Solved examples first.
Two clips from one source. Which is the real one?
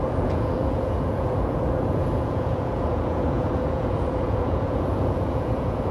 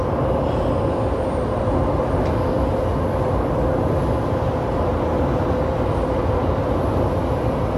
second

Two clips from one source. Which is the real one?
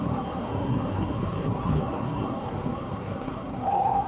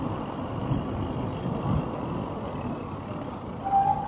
second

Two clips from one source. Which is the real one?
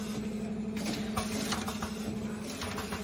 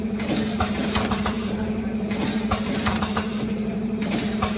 first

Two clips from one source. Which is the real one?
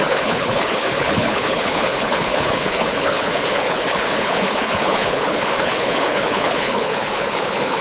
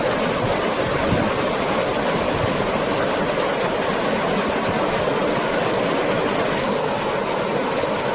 second